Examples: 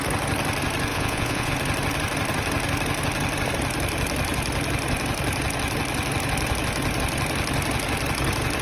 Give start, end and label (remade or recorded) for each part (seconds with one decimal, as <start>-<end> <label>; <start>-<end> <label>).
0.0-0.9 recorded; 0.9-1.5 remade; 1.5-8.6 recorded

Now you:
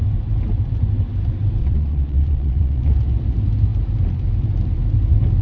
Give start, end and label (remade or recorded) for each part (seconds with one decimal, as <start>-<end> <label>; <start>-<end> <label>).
0.0-1.6 recorded; 1.6-2.9 remade; 2.9-5.4 recorded

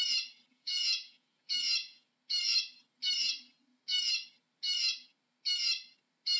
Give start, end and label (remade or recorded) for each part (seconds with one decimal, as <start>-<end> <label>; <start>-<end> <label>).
0.0-0.5 recorded; 0.5-2.1 remade; 2.1-6.4 recorded

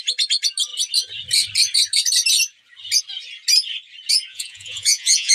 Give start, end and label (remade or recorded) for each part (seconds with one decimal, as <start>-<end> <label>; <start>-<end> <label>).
0.0-4.3 recorded; 4.3-5.3 remade

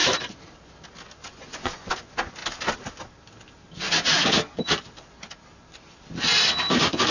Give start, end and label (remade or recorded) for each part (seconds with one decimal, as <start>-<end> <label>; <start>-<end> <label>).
0.0-1.2 recorded; 1.2-1.9 remade; 1.9-7.1 recorded